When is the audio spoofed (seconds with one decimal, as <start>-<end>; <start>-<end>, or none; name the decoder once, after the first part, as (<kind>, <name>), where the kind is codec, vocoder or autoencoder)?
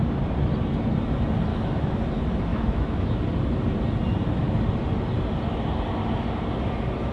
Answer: 1.5-2.0 (autoencoder, DAC-VAE); 2.5-3.2